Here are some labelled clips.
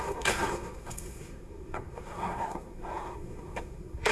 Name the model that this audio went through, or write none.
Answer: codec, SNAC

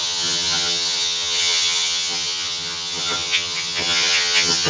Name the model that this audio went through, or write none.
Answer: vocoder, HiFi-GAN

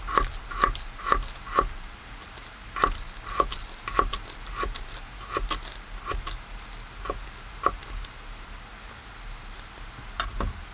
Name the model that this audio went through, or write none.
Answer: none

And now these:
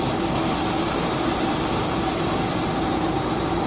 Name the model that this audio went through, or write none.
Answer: none